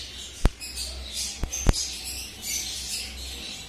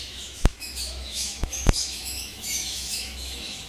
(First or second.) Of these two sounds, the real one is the first